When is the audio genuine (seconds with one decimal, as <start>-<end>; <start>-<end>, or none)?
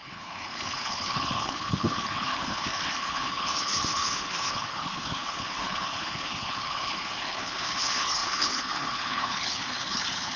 none